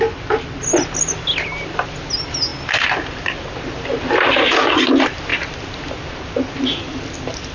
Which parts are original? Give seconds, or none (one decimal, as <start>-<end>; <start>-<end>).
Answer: 0.0-7.5